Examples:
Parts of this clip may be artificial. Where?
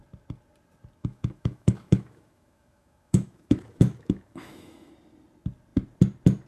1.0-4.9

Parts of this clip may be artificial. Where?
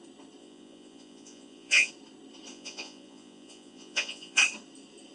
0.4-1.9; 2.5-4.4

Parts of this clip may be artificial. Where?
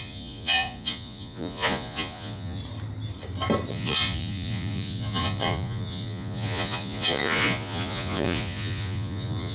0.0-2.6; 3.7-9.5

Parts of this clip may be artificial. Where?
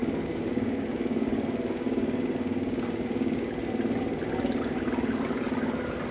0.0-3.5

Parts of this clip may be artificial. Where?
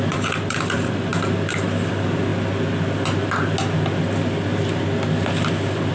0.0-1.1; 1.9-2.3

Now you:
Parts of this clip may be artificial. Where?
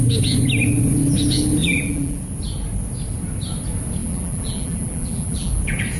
1.6-2.2; 4.0-5.5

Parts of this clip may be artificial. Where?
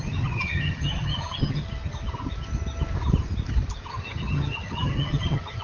0.0-1.6; 3.9-5.6